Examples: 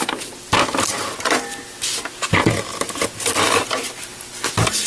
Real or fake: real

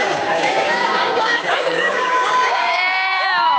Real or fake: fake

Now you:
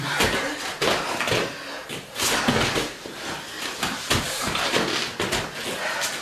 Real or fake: real